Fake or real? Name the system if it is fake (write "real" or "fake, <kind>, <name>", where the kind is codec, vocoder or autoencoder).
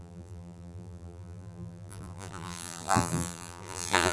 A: fake, vocoder, BigVGAN v2